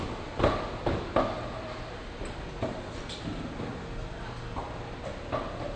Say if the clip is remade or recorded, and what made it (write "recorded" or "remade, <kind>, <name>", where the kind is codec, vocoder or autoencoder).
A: recorded